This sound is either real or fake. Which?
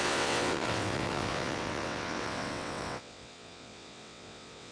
fake